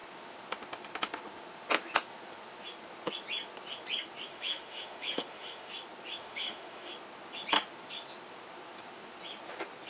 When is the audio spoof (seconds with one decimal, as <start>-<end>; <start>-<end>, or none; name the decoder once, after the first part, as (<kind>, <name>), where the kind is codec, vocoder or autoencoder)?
4.3-5.7 (autoencoder, DAC-VAE); 6.2-6.9